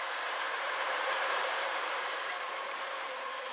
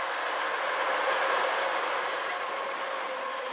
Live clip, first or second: second